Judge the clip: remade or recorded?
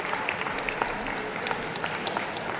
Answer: recorded